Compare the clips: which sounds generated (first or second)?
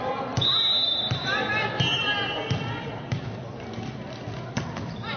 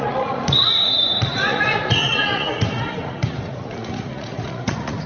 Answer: second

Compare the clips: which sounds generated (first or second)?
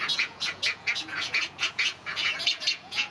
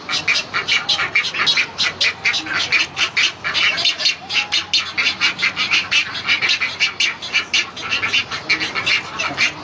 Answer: first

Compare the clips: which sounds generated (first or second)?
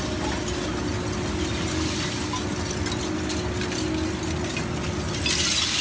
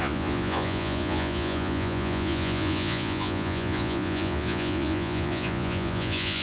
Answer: second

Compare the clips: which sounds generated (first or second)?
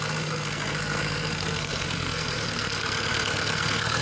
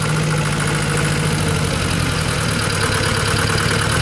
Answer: first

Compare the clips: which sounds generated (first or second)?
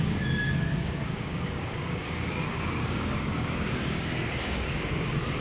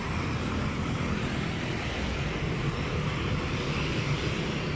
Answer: first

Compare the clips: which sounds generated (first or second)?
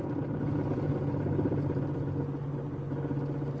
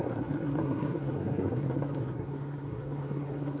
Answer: second